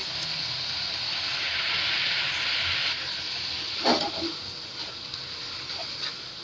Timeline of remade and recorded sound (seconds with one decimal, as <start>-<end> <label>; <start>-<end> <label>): 0.0-6.4 recorded